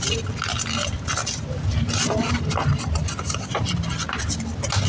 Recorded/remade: recorded